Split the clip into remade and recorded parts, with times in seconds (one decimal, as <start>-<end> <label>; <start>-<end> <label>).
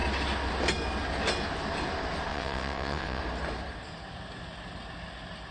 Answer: 0.0-2.3 recorded; 2.3-3.2 remade; 3.2-5.5 recorded